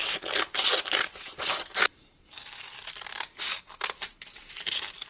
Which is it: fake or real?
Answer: real